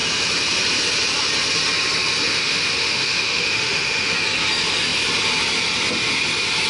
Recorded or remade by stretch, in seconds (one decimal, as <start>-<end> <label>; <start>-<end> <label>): 0.0-2.3 recorded; 2.3-4.1 remade; 4.1-6.7 recorded